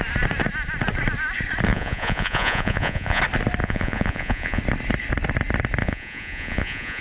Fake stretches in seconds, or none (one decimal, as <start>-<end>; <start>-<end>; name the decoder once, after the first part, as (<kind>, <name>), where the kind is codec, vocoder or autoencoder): 1.7-3.2 (vocoder, Vocos); 3.6-4.6; 5.8-7.0